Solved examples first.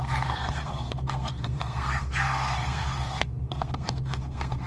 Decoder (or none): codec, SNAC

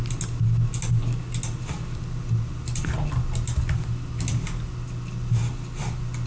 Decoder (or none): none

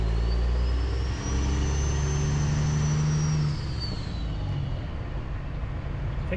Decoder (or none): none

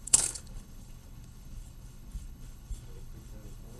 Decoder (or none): codec, HILCodec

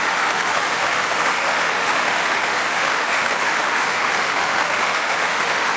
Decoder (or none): autoencoder, DAC-VAE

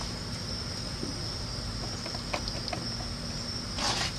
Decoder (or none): none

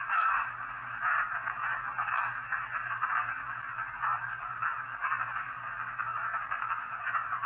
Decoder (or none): none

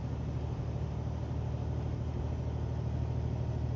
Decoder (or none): none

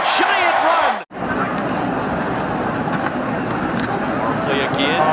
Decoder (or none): none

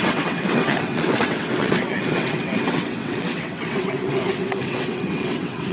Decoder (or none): vocoder, WaveNeXt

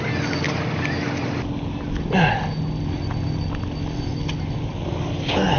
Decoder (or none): none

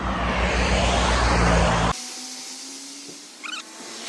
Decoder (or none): none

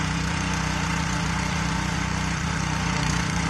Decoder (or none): vocoder, Vocos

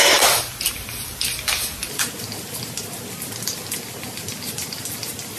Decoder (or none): none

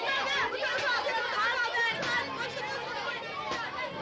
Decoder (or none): none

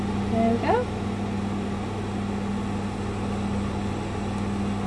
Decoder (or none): none